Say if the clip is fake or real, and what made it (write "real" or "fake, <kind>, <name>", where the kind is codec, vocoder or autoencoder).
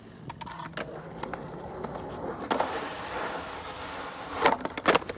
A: real